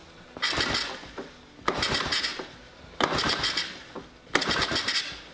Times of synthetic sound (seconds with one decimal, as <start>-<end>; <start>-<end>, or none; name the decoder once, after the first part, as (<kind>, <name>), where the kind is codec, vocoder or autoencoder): none